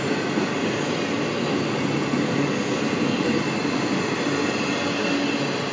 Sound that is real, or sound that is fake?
real